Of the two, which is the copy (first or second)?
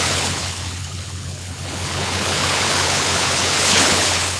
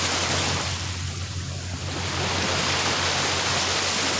first